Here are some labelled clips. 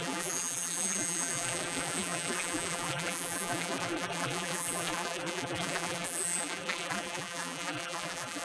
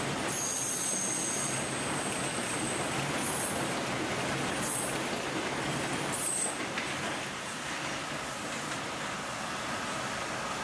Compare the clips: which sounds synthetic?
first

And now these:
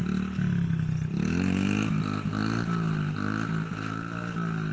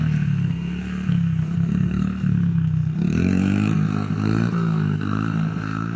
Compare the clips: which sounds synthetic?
second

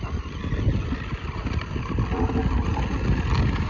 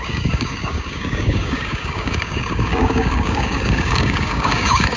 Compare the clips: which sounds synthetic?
second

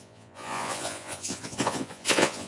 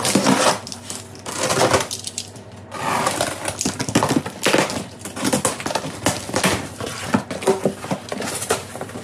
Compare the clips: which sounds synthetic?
first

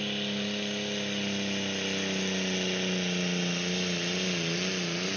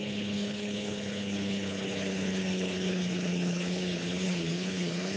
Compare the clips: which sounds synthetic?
second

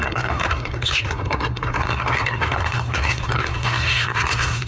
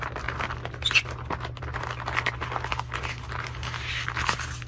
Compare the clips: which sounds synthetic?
first